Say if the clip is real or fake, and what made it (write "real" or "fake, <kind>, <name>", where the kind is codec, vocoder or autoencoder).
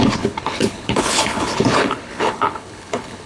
fake, codec, HILCodec